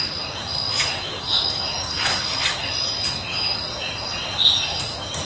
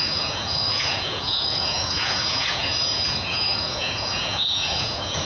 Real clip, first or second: first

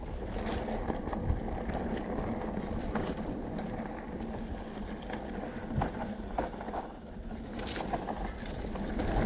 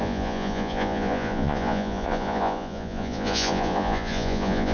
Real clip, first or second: first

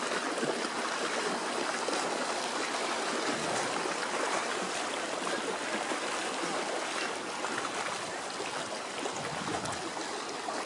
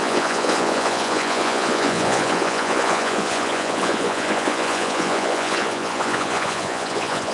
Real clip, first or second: first